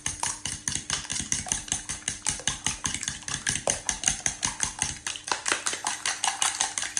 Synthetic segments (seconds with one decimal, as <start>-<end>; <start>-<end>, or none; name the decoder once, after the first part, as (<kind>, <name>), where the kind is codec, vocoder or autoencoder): none

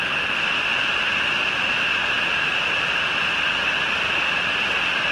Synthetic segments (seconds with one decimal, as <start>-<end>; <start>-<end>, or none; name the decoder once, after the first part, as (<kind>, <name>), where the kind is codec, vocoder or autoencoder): none

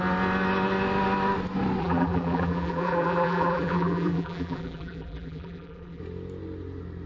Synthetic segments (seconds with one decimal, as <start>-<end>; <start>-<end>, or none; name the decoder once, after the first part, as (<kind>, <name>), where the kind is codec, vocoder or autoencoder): 1.8-6.0 (vocoder, BigVGAN v2)

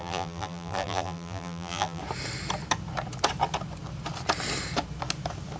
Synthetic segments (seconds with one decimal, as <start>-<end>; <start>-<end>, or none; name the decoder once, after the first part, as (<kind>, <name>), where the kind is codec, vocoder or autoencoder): 0.0-2.0 (vocoder, BigVGAN v2)

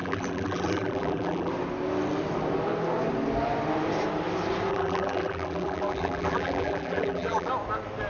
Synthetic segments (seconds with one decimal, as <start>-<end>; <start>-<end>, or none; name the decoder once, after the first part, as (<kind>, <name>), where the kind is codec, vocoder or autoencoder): 0.0-1.5 (vocoder, BigVGAN v2); 4.7-7.5

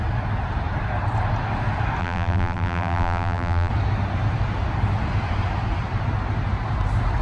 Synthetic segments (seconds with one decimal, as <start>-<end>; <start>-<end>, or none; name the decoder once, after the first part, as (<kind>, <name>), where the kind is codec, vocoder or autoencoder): 2.0-3.7 (vocoder, BigVGAN v2)

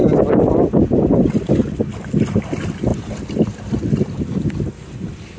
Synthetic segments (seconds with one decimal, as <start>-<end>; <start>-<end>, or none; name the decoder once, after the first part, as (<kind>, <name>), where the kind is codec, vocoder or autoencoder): 0.0-1.5 (vocoder, BigVGAN v2); 2.9-4.5

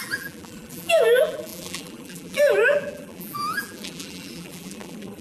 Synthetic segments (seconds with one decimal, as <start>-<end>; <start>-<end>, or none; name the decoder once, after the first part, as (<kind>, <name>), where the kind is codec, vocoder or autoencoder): 0.0-5.2 (vocoder, BigVGAN v2)